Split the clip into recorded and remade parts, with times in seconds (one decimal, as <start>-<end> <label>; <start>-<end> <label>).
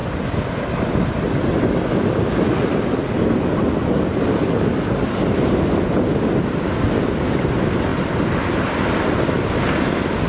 0.0-10.3 recorded